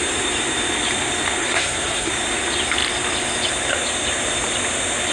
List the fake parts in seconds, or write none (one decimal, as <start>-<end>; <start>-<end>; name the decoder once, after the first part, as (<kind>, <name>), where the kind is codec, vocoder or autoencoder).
1.4-2.1 (codec, SNAC)